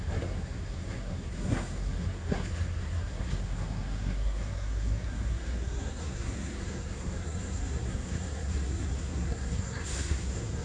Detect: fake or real fake